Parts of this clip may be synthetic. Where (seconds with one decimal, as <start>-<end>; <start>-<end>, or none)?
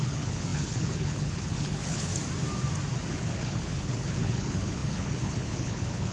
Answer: 0.0-2.1; 3.1-6.1